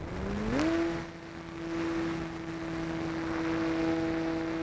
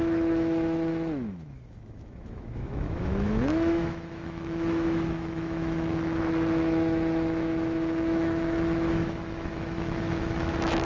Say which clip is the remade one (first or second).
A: second